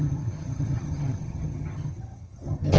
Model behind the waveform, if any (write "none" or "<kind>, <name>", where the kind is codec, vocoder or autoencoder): vocoder, HiFi-GAN